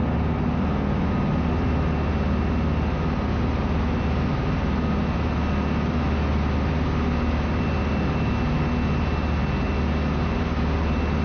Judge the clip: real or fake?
real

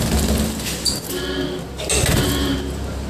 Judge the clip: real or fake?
real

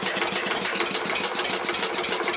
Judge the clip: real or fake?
real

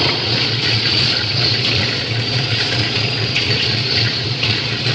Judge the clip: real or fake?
fake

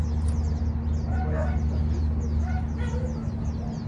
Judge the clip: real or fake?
real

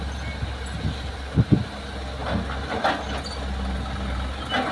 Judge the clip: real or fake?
real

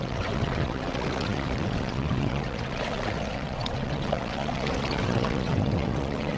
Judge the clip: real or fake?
fake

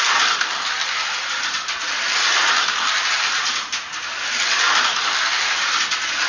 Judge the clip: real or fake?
real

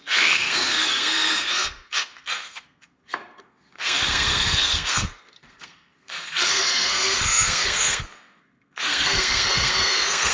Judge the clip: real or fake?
fake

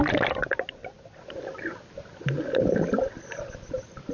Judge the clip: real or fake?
real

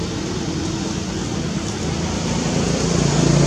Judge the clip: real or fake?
real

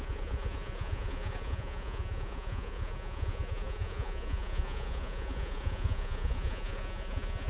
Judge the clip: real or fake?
fake